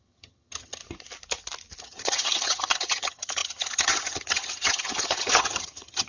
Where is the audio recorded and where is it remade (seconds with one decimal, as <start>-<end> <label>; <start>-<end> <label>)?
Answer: 0.0-0.8 remade; 0.8-1.8 recorded; 1.8-6.1 remade